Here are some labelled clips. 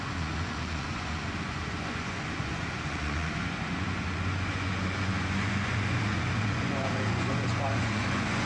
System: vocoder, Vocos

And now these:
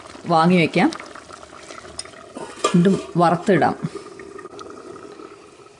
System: none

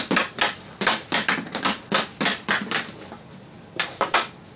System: none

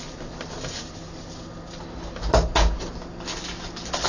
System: none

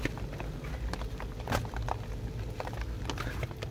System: none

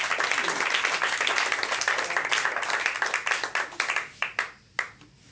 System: none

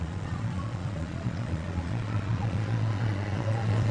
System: vocoder, Vocos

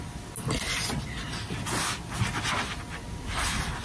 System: none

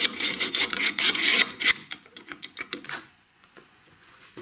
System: vocoder, Vocos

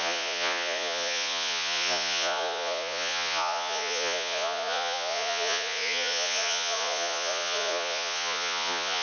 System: vocoder, Vocos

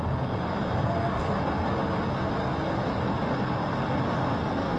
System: none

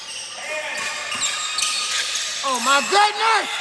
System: none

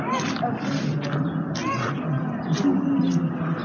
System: none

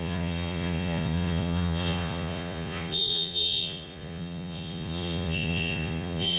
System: vocoder, Vocos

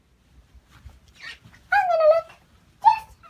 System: none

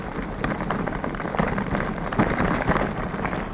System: none